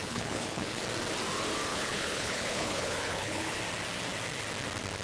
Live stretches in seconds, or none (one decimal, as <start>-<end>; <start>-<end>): 0.8-1.7; 3.6-5.0

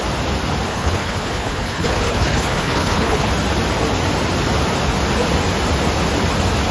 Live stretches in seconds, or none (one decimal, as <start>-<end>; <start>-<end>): 0.0-0.7; 3.3-6.7

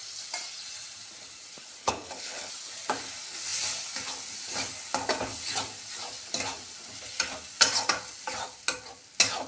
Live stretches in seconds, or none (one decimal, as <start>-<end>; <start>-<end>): 0.0-1.8; 2.5-9.5

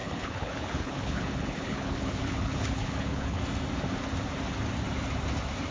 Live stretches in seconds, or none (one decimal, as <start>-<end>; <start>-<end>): 3.4-5.7

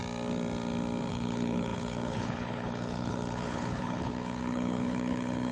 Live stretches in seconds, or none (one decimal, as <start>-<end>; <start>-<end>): 0.0-1.1

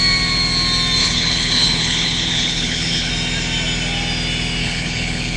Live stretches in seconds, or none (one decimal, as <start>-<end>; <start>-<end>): 0.0-1.0; 3.1-4.6